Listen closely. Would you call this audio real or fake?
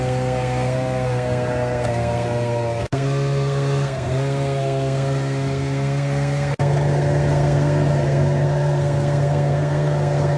fake